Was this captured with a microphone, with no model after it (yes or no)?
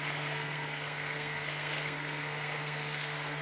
no